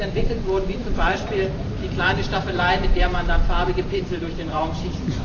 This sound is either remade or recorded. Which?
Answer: remade